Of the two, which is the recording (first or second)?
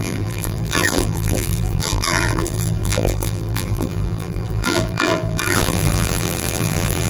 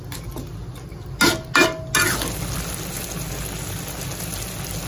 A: second